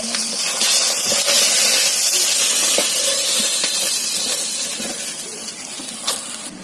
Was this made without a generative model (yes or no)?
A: yes